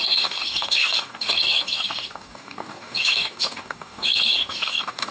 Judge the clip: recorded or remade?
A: remade